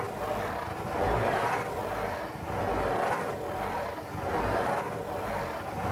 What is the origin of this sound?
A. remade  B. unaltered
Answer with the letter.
B